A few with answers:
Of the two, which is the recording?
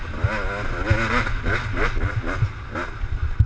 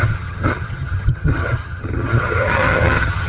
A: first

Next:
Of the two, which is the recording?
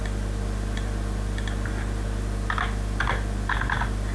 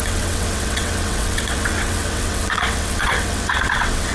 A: first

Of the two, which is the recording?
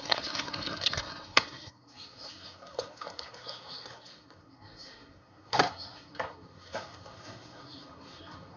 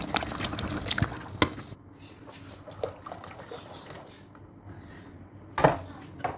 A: second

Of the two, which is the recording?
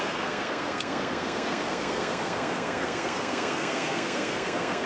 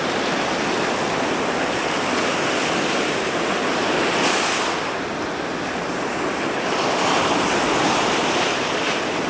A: second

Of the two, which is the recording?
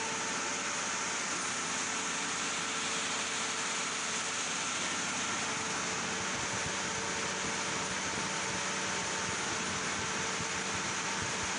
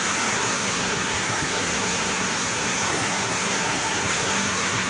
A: first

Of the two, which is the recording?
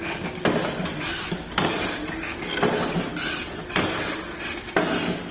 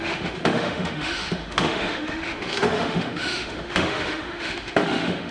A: first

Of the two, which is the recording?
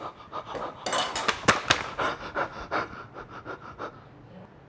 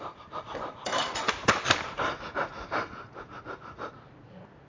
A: first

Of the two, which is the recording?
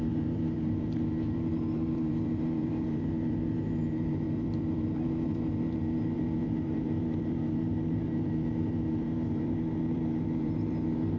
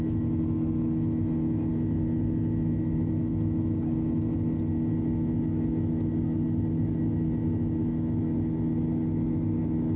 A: second